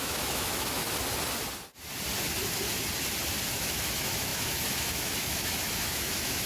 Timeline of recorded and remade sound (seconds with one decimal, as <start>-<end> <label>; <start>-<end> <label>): 0.0-0.8 remade; 0.8-3.5 recorded; 3.5-6.5 remade